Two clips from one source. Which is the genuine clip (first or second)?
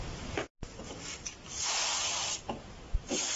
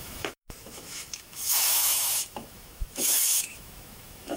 first